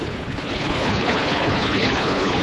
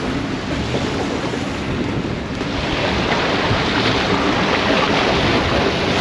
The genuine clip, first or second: second